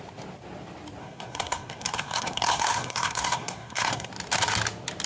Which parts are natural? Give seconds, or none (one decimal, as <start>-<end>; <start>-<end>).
0.0-1.0; 4.1-5.1